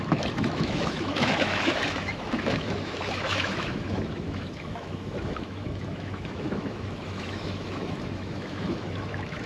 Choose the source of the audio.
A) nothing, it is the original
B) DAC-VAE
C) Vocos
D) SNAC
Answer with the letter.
B